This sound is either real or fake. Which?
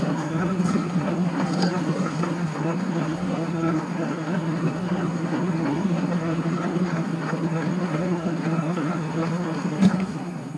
fake